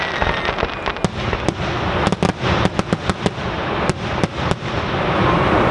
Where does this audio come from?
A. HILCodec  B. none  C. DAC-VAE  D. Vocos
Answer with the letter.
B